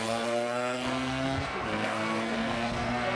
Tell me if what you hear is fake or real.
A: fake